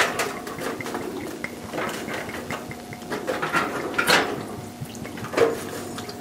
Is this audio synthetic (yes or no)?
no